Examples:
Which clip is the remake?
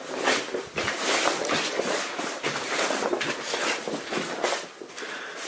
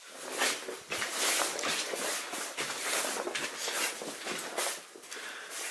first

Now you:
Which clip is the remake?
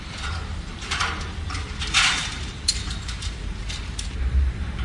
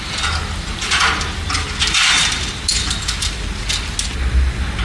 first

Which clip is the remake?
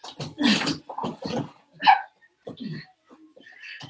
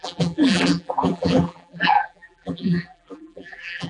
second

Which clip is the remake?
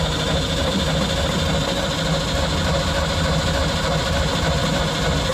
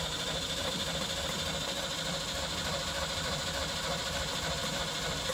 second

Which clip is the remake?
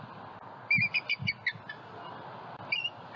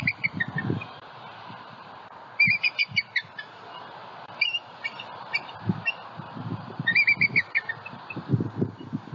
second